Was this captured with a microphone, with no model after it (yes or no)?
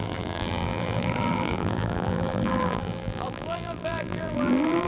no